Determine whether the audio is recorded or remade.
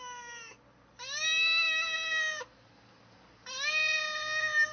recorded